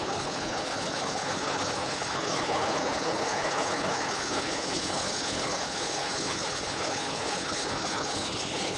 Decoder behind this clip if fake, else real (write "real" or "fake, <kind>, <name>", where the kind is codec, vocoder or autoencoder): fake, codec, HILCodec